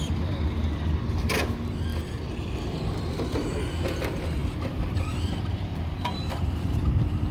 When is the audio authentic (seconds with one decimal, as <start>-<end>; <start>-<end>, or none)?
0.0-7.3